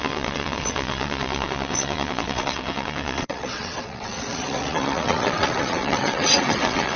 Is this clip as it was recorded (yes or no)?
no